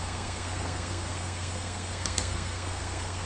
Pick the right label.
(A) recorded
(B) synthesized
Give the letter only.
B